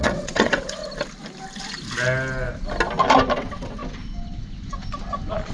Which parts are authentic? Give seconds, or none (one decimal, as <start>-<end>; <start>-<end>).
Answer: 0.8-3.3; 3.8-5.5